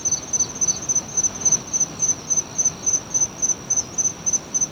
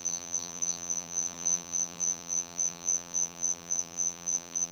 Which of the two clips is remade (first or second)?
second